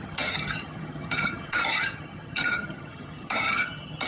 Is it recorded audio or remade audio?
remade